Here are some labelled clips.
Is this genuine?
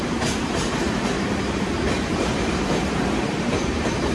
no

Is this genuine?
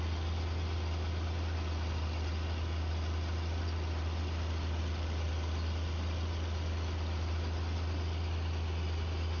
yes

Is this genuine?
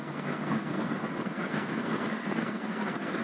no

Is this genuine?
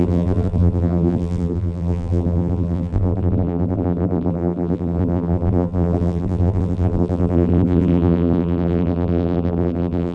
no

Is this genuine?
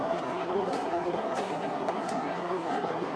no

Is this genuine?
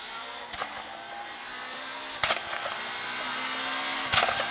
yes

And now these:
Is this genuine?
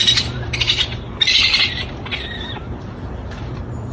no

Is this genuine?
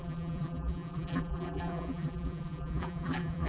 no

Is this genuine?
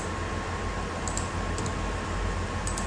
yes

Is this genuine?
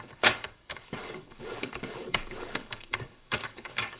no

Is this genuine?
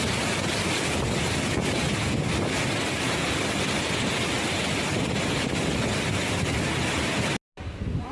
yes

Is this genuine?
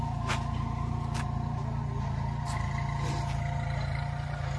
yes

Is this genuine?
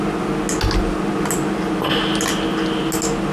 yes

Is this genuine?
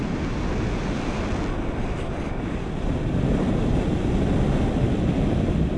yes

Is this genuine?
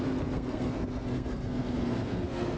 no